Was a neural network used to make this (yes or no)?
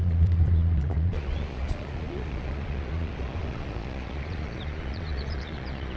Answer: yes